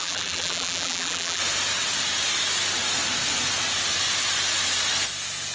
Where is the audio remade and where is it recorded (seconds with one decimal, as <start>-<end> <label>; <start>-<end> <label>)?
0.0-1.4 remade; 1.4-5.5 recorded